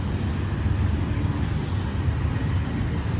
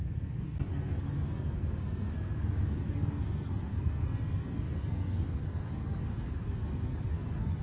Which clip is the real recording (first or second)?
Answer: first